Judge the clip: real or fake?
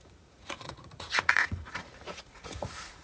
fake